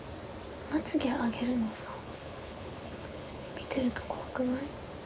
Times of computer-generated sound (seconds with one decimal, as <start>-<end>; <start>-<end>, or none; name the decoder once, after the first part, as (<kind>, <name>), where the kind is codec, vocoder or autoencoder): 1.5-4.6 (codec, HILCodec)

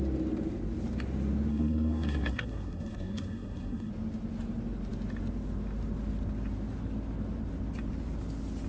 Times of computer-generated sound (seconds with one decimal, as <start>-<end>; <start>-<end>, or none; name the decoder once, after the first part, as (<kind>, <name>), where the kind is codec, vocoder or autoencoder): 1.5-3.9 (codec, SNAC)

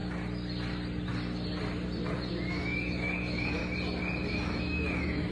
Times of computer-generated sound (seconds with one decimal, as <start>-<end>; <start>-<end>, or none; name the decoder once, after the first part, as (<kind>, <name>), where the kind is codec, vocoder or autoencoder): 2.3-3.6 (autoencoder, DAC-VAE); 4.3-5.3